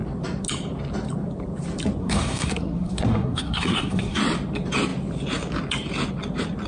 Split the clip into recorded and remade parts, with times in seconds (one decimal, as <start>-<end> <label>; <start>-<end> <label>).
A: 0.0-2.0 recorded; 2.0-4.2 remade; 4.2-6.7 recorded